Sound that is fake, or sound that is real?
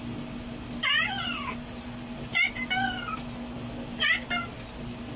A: real